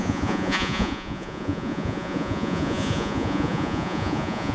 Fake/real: fake